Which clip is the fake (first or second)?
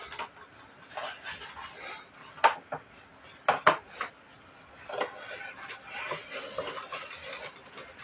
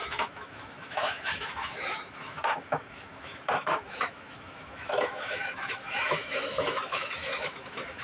second